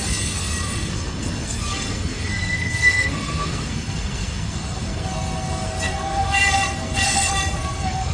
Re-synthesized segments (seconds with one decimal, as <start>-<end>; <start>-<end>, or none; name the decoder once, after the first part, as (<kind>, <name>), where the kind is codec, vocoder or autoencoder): 0.0-8.1 (codec, SNAC)